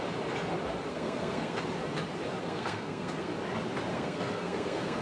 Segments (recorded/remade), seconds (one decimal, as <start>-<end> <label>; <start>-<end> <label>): 0.0-0.9 recorded; 0.9-1.6 remade; 1.6-2.4 recorded; 2.4-3.3 remade; 3.3-3.9 recorded; 3.9-5.0 remade